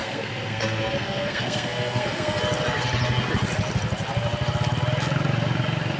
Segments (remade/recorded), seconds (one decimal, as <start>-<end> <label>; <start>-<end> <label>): 0.0-2.4 remade; 2.4-6.0 recorded